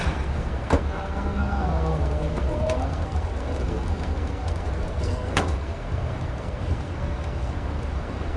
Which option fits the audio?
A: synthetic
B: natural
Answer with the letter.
A